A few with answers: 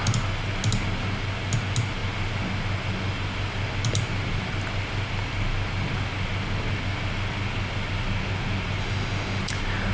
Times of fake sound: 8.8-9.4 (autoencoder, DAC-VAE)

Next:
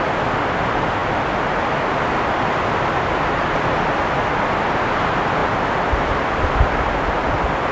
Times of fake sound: none

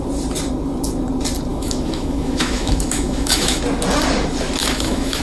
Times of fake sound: 1.5-3.6 (autoencoder, DAC-VAE); 4.6-5.2

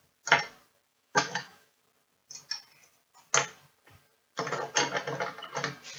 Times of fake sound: 0.9-1.8 (autoencoder, DAC-VAE)

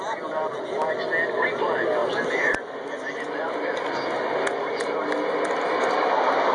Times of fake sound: none

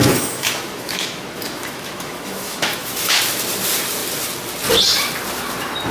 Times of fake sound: 0.0-3.2 (autoencoder, DAC-VAE)

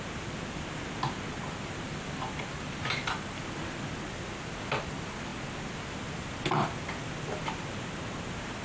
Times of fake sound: none